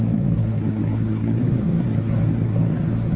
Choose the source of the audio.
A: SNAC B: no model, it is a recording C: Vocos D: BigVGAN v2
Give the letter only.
A